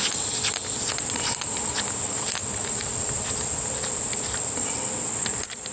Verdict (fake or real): real